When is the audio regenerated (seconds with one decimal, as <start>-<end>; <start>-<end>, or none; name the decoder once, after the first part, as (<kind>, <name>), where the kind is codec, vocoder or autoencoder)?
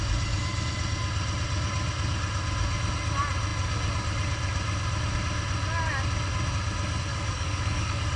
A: 7.1-8.2 (codec, DAC)